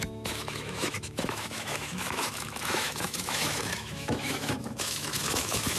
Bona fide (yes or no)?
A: no